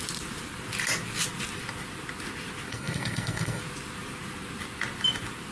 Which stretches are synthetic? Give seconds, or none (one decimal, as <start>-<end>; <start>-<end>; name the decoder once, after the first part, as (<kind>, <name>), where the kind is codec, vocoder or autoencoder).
2.7-3.6 (codec, SNAC)